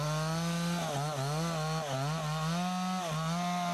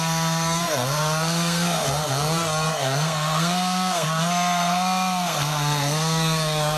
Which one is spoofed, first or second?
second